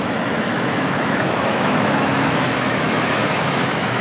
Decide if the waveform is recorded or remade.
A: remade